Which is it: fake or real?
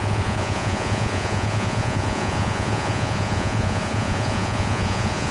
fake